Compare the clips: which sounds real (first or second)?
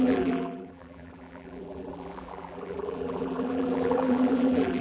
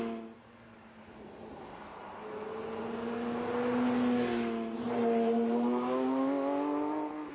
second